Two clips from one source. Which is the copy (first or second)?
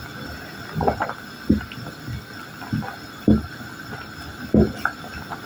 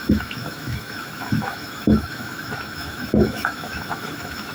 second